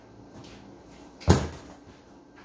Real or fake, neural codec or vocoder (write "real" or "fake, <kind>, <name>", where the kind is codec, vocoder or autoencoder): real